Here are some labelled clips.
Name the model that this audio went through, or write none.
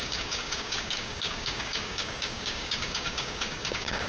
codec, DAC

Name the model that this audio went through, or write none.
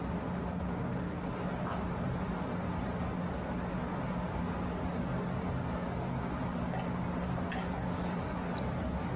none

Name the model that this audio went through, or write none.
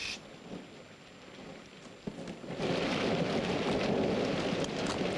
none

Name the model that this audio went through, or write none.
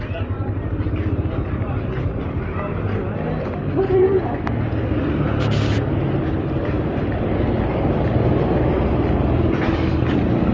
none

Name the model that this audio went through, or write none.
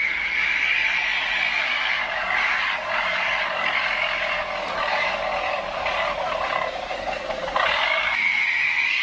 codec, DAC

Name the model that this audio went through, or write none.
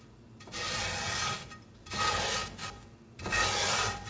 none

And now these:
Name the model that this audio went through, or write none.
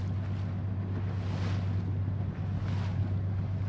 none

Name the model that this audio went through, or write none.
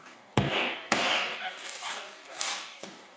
codec, DAC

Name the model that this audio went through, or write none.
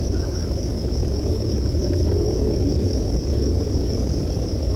codec, DAC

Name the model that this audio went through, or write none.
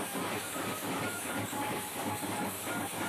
codec, DAC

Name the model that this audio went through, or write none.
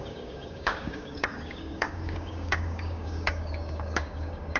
codec, DAC